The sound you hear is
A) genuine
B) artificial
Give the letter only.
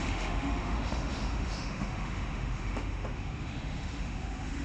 B